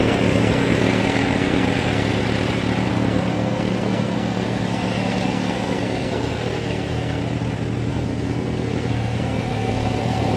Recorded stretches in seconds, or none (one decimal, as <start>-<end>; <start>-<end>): 2.2-2.9; 7.2-7.9